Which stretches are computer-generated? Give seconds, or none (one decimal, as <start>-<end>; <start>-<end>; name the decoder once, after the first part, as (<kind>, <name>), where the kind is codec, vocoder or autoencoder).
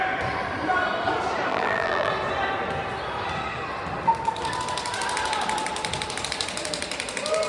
1.5-2.1 (vocoder, BigVGAN v2)